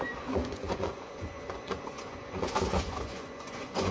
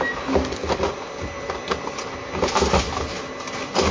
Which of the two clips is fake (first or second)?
first